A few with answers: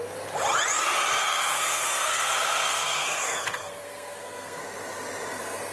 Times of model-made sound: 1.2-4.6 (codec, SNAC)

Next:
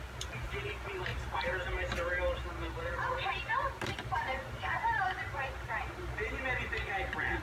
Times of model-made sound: none

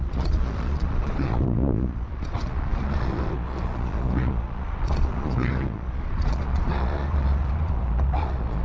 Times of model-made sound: 0.0-8.6 (vocoder, Vocos)

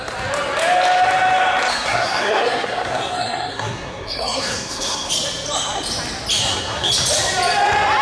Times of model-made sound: 1.7-5.1 (codec, SNAC); 6.4-6.9

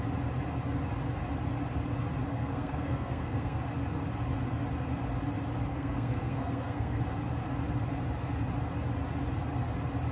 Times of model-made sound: 2.3-3.6 (codec, SNAC); 5.7-7.0